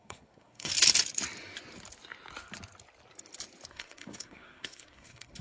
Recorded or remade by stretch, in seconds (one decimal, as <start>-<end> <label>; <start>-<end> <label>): 0.0-0.7 remade; 0.7-3.7 recorded; 3.7-5.4 remade